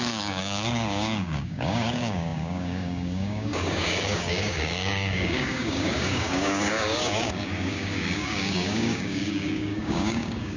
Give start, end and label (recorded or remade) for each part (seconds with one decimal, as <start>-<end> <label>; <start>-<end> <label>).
0.0-10.6 remade